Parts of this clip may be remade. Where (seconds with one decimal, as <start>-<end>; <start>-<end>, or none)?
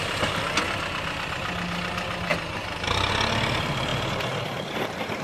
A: none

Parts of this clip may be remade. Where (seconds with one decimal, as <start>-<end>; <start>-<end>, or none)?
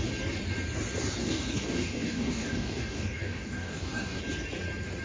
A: 1.2-4.2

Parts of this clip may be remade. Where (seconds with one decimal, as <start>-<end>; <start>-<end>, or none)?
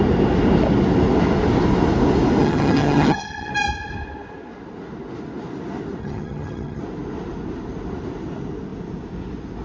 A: 2.4-3.5; 6.0-6.8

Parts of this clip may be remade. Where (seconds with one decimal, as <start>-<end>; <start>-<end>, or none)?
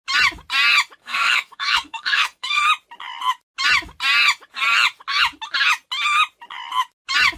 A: 1.0-2.6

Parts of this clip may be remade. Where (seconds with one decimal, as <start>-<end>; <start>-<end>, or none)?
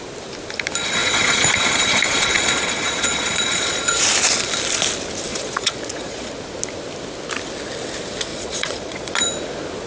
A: 1.0-4.0; 5.3-6.3; 8.3-9.1